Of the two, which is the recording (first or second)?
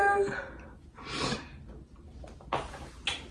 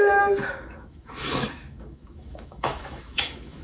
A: first